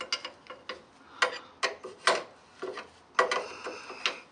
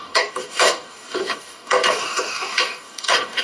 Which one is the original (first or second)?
first